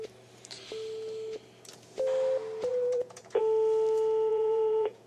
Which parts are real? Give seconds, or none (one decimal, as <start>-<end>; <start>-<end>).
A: 0.0-2.7; 3.4-4.3